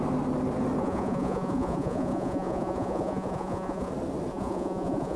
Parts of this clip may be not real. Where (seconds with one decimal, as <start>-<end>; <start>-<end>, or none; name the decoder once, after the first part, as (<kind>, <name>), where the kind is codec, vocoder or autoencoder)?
0.8-3.9 (vocoder, Vocos); 4.3-5.2

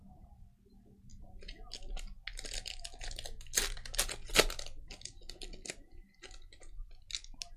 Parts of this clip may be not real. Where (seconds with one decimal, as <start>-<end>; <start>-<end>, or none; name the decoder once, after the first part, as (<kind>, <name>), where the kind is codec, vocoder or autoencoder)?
none

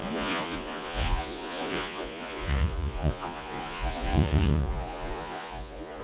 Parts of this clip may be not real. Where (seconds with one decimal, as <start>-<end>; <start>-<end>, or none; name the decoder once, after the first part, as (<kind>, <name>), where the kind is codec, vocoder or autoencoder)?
0.0-6.0 (vocoder, Vocos)

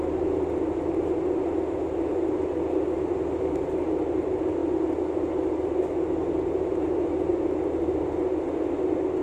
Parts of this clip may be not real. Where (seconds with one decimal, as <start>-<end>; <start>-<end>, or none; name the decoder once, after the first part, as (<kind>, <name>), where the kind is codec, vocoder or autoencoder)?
none

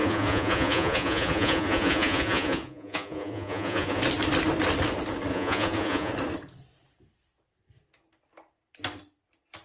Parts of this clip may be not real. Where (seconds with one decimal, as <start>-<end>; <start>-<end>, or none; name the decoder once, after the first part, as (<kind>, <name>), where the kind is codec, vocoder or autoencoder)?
0.0-4.0 (vocoder, Vocos); 5.3-6.1

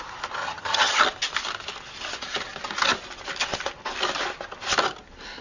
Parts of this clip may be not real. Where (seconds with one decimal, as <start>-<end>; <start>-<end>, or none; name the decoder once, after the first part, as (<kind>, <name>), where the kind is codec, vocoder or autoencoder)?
0.4-1.0 (vocoder, HiFi-GAN)

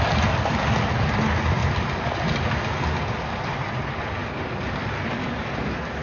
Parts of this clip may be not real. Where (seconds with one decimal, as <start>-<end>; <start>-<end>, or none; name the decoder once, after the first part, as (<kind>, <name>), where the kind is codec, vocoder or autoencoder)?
none